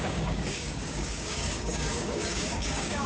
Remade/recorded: remade